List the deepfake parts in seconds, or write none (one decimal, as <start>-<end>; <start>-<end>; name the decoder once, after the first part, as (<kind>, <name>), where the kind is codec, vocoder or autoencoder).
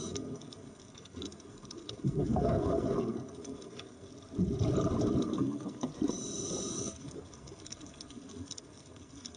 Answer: 0.0-4.1 (codec, SNAC); 5.2-5.9; 6.7-9.4